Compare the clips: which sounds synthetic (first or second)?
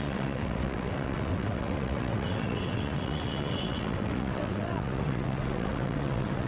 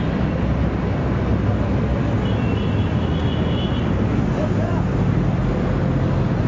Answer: first